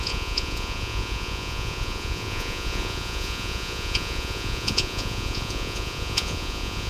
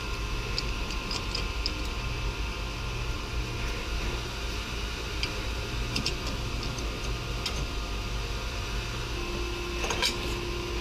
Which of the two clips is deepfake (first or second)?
first